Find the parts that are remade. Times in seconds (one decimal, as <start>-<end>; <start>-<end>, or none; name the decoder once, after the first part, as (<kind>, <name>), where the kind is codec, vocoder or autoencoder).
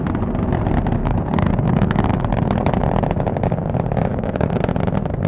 1.0-2.2 (codec, DAC); 4.1-4.6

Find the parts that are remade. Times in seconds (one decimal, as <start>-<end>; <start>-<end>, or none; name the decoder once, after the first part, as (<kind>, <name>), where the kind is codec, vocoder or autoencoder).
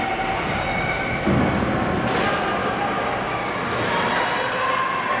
2.6-3.9 (codec, DAC)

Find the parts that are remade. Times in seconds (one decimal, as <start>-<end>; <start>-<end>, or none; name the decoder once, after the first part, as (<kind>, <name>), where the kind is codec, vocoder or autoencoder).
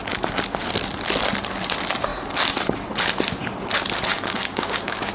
4.1-5.1 (codec, DAC)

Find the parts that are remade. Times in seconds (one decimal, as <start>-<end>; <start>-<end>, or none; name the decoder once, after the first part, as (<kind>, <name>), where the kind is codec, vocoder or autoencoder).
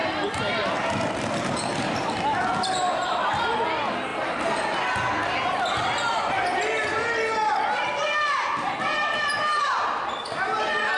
none